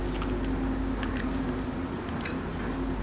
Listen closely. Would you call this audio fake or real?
real